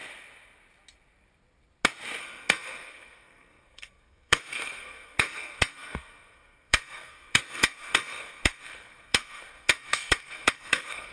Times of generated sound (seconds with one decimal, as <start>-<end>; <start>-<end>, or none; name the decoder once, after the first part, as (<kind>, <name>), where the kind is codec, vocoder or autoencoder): 2.2-11.1 (codec, SNAC)

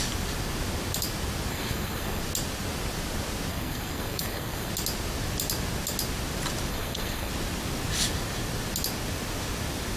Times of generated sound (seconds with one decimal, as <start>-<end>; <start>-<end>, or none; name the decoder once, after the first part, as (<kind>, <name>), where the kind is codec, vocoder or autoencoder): 1.5-2.2 (codec, SNAC); 3.5-4.7; 6.7-7.3

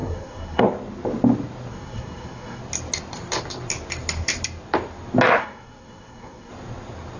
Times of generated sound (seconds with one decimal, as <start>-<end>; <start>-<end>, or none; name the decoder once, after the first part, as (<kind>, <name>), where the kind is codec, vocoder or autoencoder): 0.0-0.6 (codec, SNAC); 1.7-2.6; 5.4-6.5